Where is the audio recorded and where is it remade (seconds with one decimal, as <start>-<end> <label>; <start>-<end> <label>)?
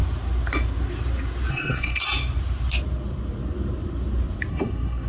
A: 0.0-1.5 recorded; 1.5-2.0 remade; 2.0-4.5 recorded; 4.5-5.1 remade